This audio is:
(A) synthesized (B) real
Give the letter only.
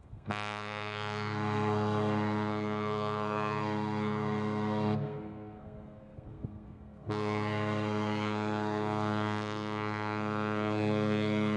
A